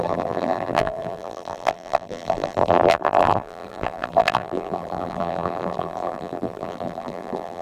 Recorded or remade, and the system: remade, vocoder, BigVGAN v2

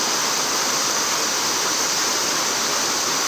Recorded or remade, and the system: recorded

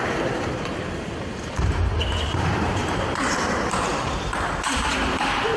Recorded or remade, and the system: remade, vocoder, BigVGAN v2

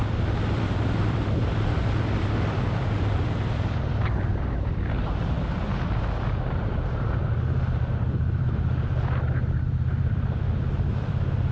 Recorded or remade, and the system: remade, vocoder, BigVGAN v2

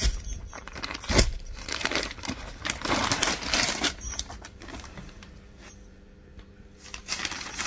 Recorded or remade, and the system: remade, vocoder, BigVGAN v2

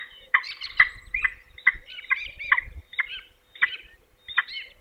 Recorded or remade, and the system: recorded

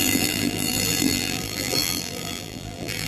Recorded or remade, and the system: remade, vocoder, BigVGAN v2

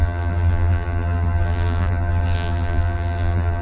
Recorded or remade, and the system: remade, vocoder, BigVGAN v2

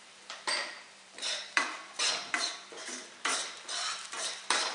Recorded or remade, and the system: remade, vocoder, BigVGAN v2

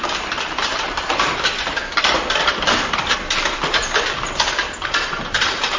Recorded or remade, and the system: remade, vocoder, BigVGAN v2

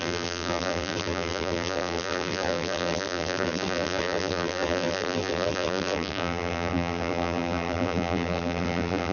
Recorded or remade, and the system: remade, vocoder, BigVGAN v2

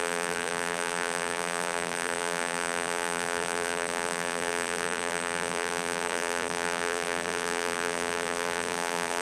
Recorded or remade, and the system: remade, vocoder, BigVGAN v2